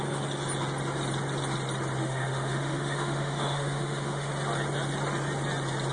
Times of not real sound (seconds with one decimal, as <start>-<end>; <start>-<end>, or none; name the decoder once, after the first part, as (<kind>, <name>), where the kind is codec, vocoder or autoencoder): 2.0-4.3 (autoencoder, DAC-VAE)